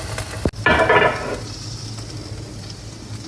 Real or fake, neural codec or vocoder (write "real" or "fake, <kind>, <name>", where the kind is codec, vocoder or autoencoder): real